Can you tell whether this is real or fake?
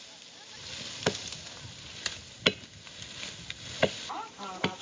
real